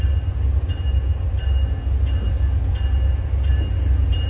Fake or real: real